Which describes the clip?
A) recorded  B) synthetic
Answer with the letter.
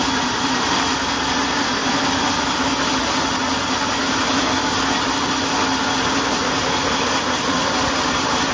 A